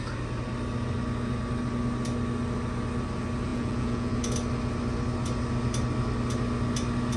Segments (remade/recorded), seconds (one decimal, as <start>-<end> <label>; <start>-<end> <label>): 0.0-3.5 recorded; 3.5-4.2 remade; 4.2-7.2 recorded